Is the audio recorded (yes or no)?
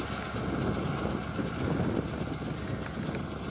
yes